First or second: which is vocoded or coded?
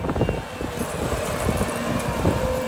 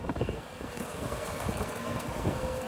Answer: second